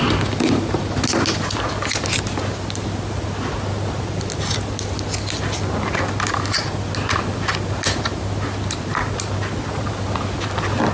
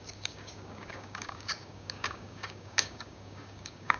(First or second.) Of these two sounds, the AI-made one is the second